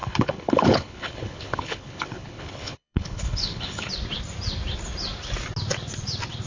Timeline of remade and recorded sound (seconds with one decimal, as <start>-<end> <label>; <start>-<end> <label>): 0.0-3.9 remade; 3.9-6.5 recorded